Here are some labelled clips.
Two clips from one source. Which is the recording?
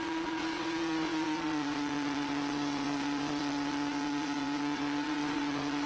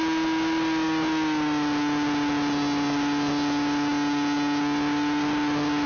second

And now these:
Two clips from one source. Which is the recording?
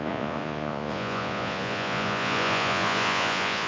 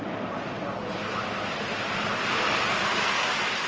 second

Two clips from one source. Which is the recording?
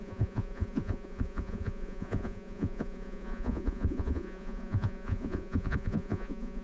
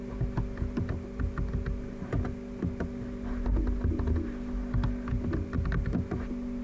second